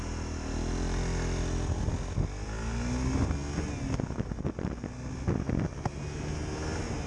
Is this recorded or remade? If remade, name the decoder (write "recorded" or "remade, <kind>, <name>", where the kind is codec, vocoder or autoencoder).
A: recorded